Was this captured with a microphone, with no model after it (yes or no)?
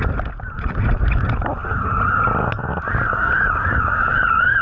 yes